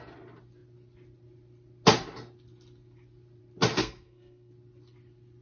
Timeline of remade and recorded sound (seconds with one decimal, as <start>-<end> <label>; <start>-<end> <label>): 0.0-3.8 recorded; 3.8-4.5 remade; 4.5-5.4 recorded